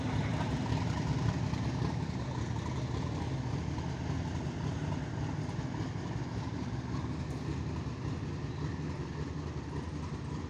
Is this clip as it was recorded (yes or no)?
yes